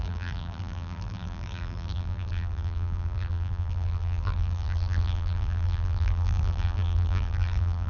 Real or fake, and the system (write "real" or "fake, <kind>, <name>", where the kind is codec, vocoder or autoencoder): fake, vocoder, BigVGAN v2